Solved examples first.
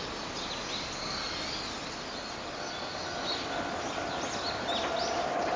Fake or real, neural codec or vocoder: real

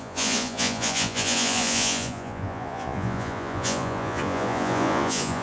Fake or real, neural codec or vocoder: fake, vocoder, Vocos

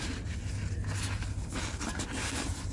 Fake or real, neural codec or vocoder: real